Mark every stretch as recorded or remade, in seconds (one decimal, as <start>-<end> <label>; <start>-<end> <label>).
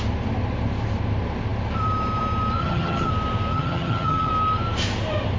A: 0.0-2.6 recorded; 2.6-3.1 remade; 3.1-3.5 recorded; 3.5-4.3 remade; 4.3-5.4 recorded